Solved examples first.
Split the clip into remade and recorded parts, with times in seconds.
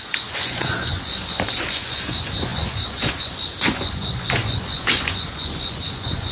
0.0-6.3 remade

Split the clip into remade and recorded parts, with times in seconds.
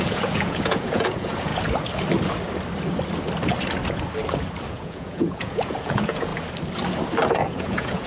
0.0-1.5 remade; 1.5-4.7 recorded; 4.7-6.3 remade; 6.3-7.3 recorded; 7.3-8.1 remade